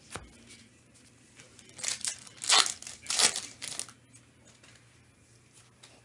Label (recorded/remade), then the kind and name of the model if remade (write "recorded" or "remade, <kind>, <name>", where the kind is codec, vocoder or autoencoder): recorded